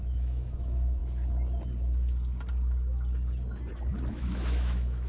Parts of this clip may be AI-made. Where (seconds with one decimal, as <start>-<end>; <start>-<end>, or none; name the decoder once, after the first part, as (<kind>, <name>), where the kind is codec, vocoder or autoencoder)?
0.0-1.0 (autoencoder, DAC-VAE); 4.1-5.1